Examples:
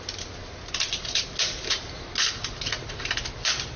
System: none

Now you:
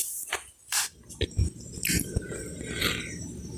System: vocoder, BigVGAN v2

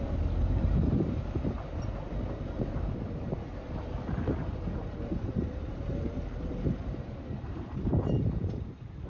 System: vocoder, BigVGAN v2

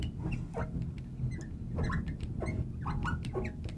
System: none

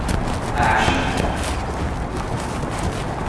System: none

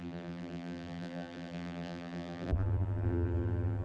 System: vocoder, BigVGAN v2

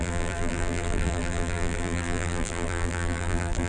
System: vocoder, BigVGAN v2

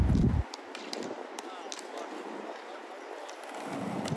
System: none